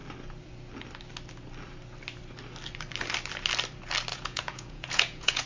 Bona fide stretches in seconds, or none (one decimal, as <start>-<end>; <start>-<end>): 0.0-4.1